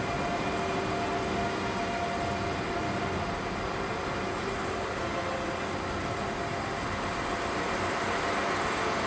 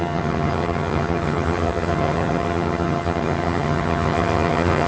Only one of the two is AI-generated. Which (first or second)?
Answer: second